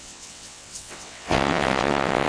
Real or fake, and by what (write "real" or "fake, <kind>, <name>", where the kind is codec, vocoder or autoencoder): fake, vocoder, WaveNeXt